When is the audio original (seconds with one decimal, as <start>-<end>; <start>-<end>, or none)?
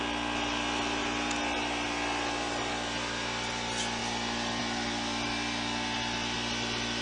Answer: 0.0-7.0